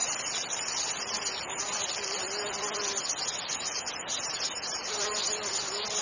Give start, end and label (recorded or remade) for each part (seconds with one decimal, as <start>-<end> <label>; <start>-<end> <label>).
0.0-6.0 recorded